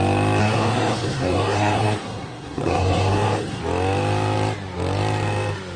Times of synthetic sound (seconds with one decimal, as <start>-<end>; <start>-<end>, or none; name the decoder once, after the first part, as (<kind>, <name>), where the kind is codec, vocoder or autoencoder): 0.4-3.6 (codec, SNAC)